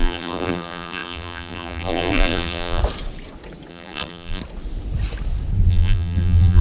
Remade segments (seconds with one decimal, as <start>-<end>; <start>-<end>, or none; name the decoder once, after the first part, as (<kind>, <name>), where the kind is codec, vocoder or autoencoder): 0.0-2.8 (vocoder, BigVGAN v2); 3.7-4.4; 5.7-6.6